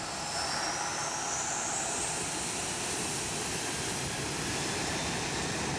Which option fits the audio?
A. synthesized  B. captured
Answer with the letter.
B